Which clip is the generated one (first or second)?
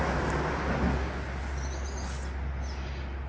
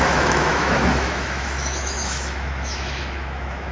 second